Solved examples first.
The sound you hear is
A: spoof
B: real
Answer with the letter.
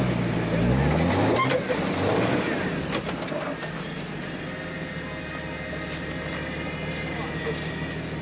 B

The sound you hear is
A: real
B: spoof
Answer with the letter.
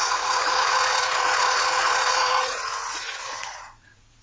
B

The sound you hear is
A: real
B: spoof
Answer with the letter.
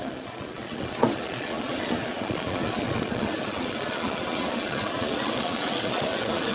B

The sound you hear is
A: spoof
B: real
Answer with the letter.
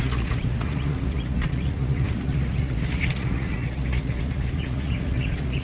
A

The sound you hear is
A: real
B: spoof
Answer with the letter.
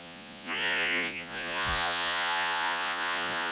B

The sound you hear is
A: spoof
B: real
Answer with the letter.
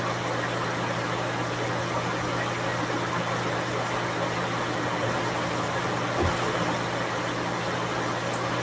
B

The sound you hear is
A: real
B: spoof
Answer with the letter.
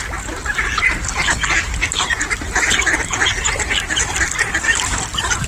A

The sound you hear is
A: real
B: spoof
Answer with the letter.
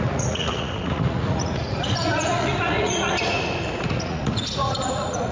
B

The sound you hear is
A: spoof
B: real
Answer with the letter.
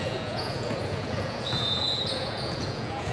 A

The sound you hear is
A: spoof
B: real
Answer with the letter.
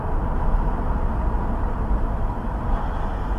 B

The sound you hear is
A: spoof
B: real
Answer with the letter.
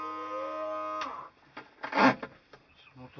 B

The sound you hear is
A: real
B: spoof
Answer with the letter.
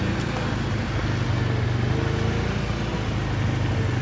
A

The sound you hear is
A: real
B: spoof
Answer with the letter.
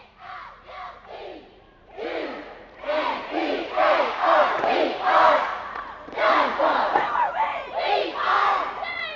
B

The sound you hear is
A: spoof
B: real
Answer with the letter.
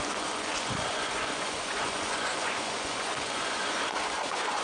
A